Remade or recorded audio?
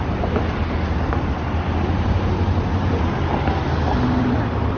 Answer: recorded